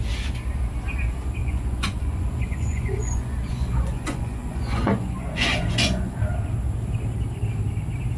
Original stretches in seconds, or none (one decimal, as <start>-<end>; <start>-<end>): 0.0-1.4; 6.2-8.2